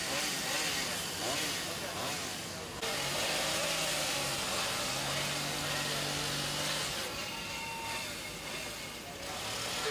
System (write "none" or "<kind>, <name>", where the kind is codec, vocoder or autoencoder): none